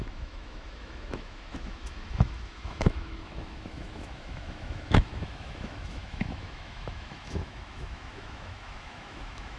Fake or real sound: fake